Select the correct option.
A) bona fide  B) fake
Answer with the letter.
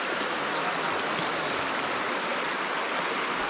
A